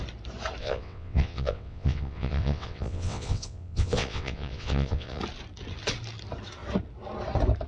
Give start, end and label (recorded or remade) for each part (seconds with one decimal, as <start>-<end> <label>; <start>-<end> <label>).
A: 0.0-0.6 recorded; 0.6-5.2 remade; 5.2-7.7 recorded